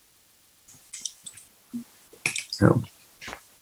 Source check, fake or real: real